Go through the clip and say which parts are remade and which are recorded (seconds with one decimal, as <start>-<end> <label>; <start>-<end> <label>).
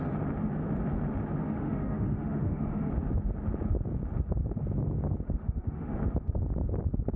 0.0-1.4 recorded; 1.4-2.9 remade; 2.9-5.4 recorded; 5.4-5.9 remade; 5.9-7.2 recorded